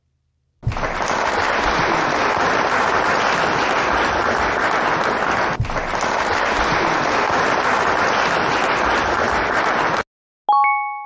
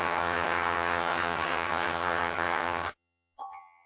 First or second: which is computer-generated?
second